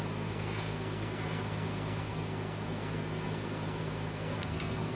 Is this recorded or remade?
remade